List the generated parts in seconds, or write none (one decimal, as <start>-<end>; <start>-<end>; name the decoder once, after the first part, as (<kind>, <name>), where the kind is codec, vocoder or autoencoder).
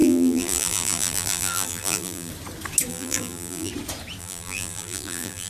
0.0-2.3 (vocoder, BigVGAN v2); 2.9-3.7; 4.2-5.5